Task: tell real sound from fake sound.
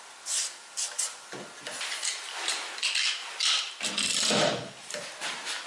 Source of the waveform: fake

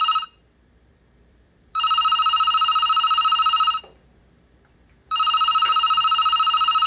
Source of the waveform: fake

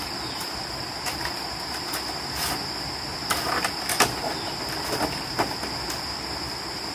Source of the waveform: real